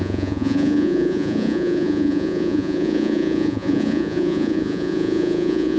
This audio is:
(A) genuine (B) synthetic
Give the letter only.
B